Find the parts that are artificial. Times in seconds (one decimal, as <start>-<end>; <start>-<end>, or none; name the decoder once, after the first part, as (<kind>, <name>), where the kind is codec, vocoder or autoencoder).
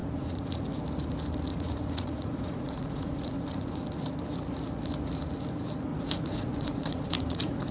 0.0-0.7 (vocoder, Vocos); 1.5-3.8; 5.9-7.7